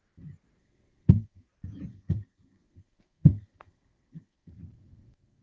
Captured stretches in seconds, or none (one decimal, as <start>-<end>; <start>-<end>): 0.0-0.6; 1.5-1.9